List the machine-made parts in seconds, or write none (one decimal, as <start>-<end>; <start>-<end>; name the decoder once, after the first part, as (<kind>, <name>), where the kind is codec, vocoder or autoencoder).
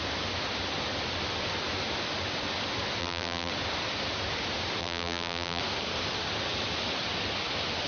3.0-3.5 (vocoder, BigVGAN v2); 4.8-5.6